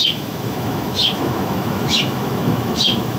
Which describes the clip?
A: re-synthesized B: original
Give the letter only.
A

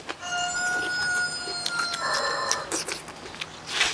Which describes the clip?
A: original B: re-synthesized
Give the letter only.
A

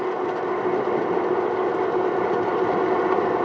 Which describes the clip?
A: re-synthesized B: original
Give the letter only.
B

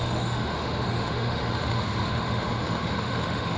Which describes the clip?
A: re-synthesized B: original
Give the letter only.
A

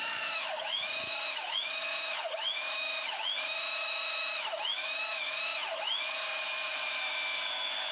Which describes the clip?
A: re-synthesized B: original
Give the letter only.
A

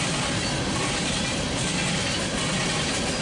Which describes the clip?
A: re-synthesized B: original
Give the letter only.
B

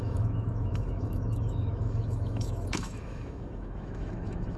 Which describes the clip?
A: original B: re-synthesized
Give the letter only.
B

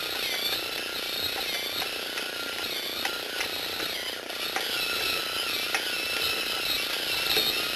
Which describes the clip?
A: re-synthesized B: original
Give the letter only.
B